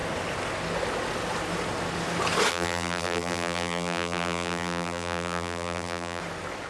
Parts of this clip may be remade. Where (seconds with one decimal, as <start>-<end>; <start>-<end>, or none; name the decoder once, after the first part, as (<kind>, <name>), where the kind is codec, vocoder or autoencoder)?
2.5-6.2 (vocoder, BigVGAN v2)